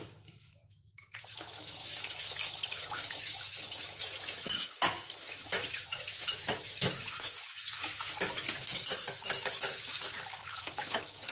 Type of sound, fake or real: fake